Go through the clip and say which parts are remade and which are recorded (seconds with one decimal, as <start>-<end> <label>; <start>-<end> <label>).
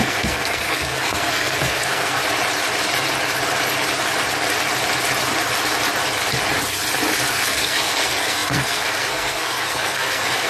0.0-2.2 remade; 2.2-7.3 recorded; 7.3-10.5 remade